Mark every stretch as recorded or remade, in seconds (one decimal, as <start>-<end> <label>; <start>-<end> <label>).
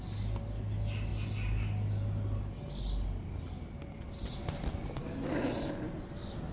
0.0-6.5 recorded